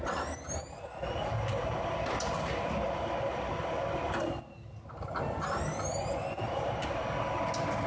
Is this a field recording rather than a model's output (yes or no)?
yes